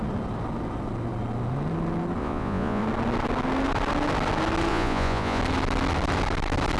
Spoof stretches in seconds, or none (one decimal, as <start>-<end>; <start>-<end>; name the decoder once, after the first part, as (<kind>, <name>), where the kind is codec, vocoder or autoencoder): 2.2-2.8 (vocoder, Vocos); 4.7-5.4